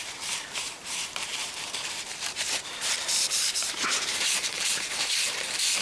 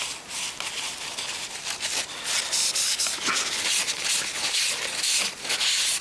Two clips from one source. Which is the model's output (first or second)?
first